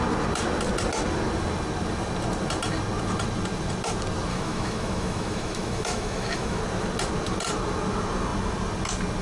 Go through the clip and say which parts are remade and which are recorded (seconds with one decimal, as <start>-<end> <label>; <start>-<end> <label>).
0.0-4.3 recorded; 4.3-6.6 remade; 6.6-9.2 recorded